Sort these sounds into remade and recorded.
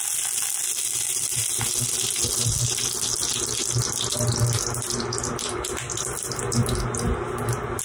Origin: recorded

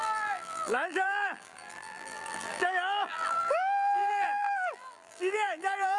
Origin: remade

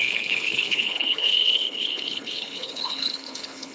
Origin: remade